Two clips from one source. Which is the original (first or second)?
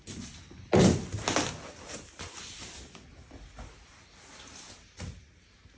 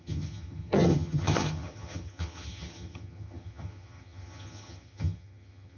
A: first